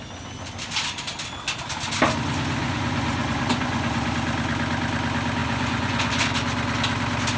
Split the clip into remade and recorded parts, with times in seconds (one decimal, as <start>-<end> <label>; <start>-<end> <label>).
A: 0.0-2.6 recorded; 2.6-4.1 remade; 4.1-5.4 recorded; 5.4-6.2 remade; 6.2-7.4 recorded